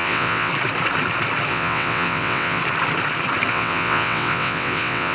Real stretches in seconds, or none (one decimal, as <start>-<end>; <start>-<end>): 0.5-1.5; 2.6-3.5